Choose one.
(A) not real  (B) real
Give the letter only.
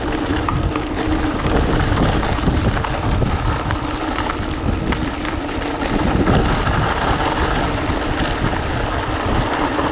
B